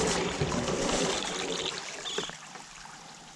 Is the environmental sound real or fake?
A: real